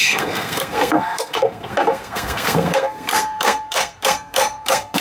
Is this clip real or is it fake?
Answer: fake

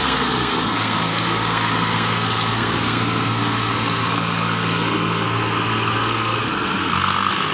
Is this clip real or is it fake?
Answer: fake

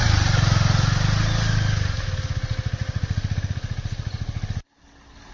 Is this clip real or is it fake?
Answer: real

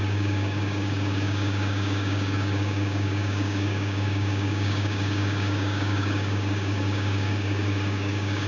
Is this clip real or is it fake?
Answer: fake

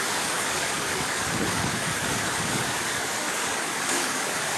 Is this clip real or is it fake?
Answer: fake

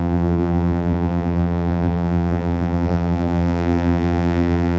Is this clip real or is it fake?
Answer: fake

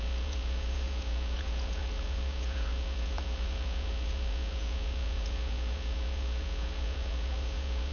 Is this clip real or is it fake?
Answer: fake